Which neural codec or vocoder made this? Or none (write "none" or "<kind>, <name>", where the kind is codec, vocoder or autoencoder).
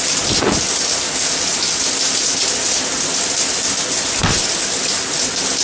none